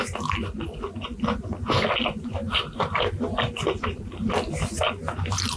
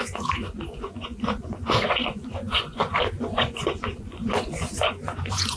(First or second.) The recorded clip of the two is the first